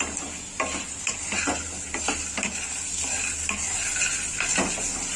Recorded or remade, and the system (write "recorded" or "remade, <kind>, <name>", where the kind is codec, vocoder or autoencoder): recorded